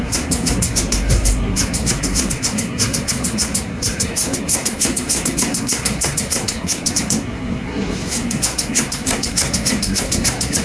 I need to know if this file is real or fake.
fake